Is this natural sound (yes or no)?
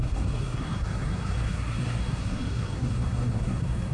no